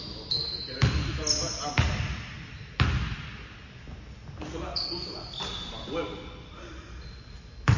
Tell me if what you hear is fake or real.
real